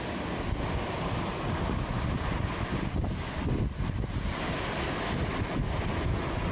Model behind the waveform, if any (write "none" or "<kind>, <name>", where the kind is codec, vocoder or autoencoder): none